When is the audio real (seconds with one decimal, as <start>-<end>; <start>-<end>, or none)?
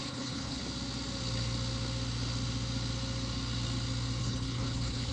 0.6-4.2